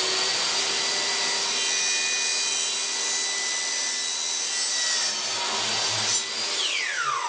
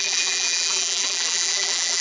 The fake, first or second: second